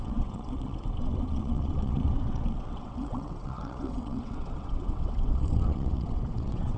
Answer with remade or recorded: remade